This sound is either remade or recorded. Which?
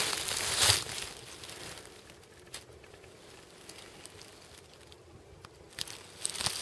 recorded